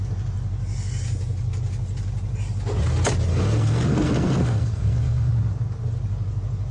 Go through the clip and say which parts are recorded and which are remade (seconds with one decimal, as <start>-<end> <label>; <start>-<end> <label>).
0.0-3.3 recorded; 3.3-5.3 remade; 5.3-6.7 recorded